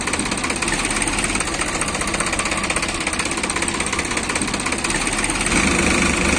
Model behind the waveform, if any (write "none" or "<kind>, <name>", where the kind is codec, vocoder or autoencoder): none